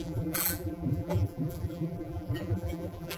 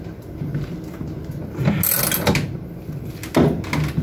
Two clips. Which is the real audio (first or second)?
second